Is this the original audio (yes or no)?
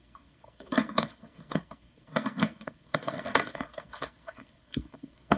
no